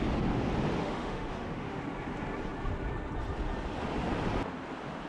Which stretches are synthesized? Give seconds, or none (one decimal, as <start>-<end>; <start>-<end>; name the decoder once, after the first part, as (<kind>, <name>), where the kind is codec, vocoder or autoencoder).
0.8-1.8 (autoencoder, DAC-VAE)

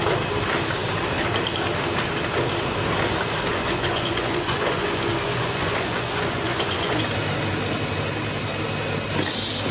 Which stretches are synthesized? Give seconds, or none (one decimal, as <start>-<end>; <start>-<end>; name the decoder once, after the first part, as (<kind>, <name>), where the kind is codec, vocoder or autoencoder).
3.5-7.0 (vocoder, Vocos)

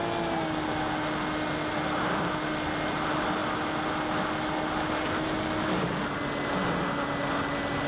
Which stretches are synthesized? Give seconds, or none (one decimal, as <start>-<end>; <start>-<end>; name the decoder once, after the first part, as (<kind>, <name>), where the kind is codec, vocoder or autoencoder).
none

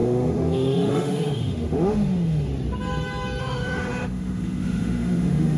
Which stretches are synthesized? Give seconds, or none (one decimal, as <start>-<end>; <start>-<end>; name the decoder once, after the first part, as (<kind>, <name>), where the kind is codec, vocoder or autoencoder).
0.0-2.5 (autoencoder, DAC-VAE); 3.4-5.6

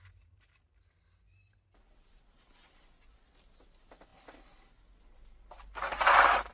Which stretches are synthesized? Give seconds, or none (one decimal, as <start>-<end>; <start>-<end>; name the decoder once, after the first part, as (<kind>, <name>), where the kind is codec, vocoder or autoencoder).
none

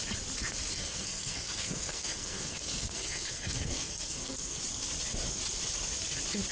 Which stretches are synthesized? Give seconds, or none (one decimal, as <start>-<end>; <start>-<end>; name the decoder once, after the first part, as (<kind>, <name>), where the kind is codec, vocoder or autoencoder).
0.7-4.6 (codec, SNAC)

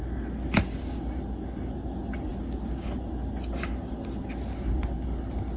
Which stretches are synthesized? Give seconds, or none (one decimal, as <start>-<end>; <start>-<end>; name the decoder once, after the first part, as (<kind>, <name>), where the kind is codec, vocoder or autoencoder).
none

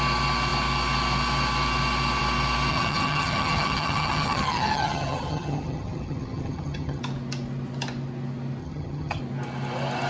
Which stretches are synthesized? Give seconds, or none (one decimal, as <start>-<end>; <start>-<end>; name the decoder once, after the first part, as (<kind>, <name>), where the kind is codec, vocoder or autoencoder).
2.7-7.0 (vocoder, HiFi-GAN); 8.6-9.2